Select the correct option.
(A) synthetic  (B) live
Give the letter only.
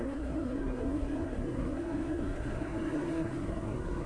A